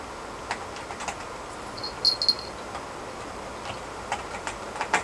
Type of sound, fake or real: real